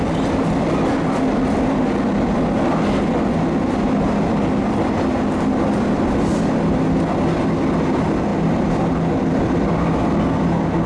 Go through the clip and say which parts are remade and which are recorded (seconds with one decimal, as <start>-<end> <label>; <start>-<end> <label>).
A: 0.0-10.9 recorded